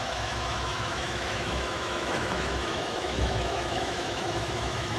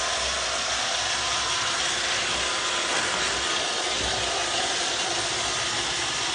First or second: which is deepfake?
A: first